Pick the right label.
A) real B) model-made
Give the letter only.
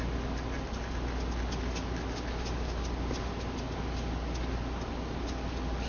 A